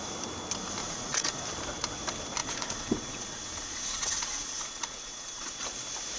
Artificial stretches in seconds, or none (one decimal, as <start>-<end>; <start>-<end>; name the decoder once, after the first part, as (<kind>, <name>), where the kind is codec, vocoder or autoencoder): 0.8-1.4 (vocoder, Vocos); 2.4-5.5